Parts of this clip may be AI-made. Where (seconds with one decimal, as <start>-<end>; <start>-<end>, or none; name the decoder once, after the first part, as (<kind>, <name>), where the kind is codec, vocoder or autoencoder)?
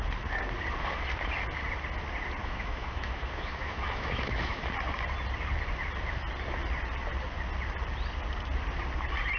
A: 2.4-4.6 (autoencoder, DAC-VAE)